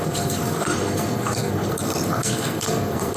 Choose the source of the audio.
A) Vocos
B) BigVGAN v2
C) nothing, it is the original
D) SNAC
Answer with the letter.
D